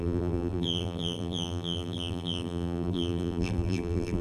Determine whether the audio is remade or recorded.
remade